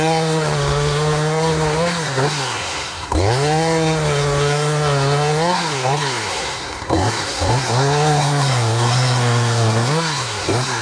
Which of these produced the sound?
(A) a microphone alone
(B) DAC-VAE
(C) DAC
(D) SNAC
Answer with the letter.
D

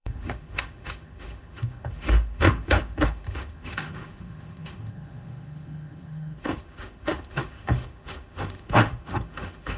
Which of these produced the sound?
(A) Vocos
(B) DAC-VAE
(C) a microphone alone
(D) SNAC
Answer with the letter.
B